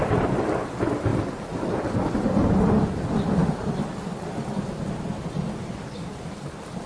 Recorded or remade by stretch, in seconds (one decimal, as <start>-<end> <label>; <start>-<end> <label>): 0.0-6.9 recorded